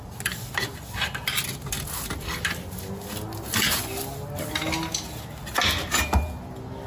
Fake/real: real